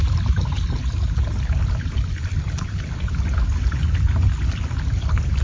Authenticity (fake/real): real